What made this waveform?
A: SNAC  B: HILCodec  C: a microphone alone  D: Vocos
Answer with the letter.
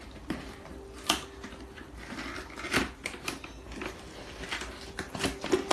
C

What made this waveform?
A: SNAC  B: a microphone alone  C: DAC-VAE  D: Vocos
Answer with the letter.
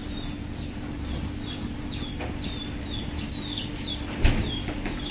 B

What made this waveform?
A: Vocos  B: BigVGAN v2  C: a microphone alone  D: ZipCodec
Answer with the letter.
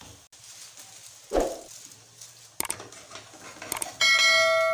C